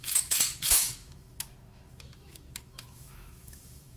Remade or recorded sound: remade